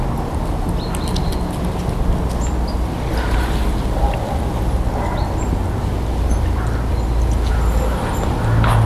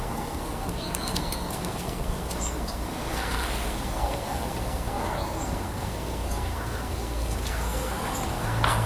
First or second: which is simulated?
second